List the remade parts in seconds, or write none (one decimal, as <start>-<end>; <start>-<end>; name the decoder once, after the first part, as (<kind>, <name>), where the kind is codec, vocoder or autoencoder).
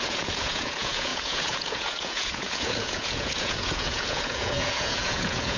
0.0-5.6 (vocoder, Vocos)